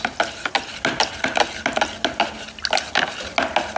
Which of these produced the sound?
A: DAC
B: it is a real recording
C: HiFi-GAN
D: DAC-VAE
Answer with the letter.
B